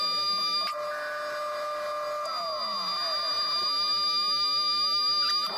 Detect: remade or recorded recorded